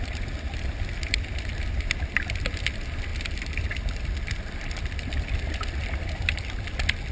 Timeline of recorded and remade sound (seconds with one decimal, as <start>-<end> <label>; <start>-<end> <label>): 0.0-7.1 recorded